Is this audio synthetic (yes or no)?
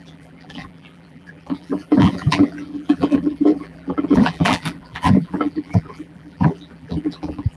yes